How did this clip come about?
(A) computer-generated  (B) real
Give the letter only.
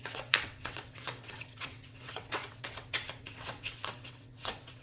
A